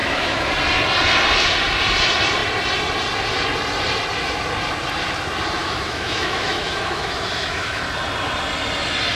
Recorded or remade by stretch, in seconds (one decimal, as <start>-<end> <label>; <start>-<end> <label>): 0.0-0.5 remade; 0.5-5.6 recorded; 5.6-7.8 remade; 7.8-9.1 recorded